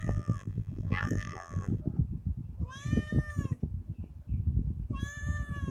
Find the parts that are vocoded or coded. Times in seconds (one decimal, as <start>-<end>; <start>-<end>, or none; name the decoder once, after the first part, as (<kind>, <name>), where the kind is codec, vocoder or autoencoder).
0.0-1.8 (vocoder, BigVGAN v2)